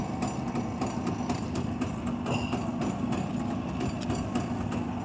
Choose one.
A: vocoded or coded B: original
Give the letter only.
B